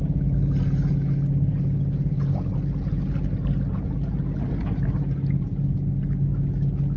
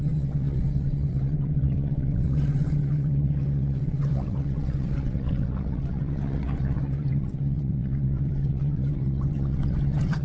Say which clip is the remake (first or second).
second